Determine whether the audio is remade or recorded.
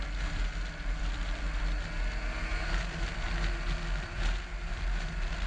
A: recorded